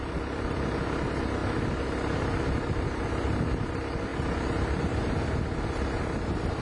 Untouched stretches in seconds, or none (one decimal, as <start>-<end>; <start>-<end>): 0.0-6.6